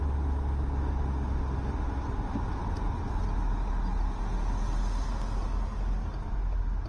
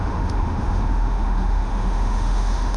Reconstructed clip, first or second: second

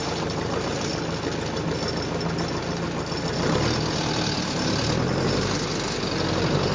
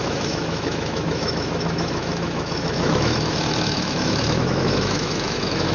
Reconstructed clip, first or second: second